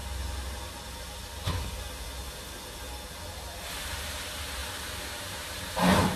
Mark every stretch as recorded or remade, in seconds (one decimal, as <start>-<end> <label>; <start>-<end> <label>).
0.0-3.7 recorded; 3.7-4.6 remade; 4.6-5.2 recorded; 5.2-6.2 remade